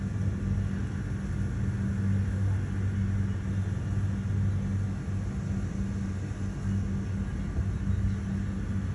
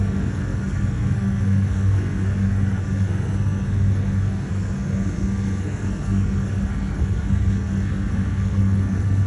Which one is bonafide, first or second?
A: first